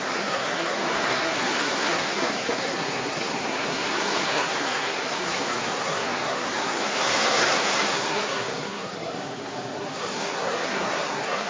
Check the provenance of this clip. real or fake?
fake